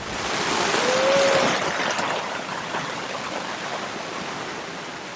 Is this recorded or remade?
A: recorded